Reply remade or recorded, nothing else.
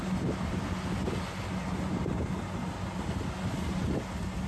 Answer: recorded